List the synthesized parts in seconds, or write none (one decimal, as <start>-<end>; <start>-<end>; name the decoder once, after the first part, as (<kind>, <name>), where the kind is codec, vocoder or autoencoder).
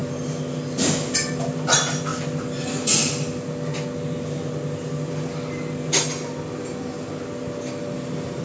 none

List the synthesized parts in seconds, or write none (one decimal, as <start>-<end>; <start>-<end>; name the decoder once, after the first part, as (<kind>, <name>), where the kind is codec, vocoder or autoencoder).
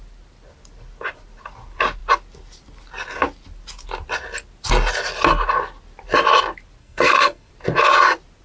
6.8-7.5 (codec, SNAC)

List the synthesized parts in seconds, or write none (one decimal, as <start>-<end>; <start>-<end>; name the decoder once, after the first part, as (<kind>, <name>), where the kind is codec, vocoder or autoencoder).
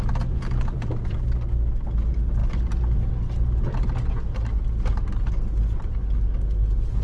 none